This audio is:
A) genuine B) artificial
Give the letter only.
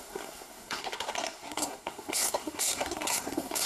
B